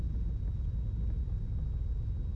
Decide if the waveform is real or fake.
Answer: real